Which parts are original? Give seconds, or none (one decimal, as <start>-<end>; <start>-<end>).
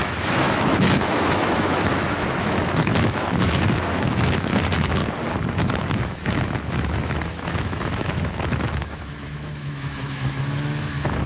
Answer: 5.0-5.5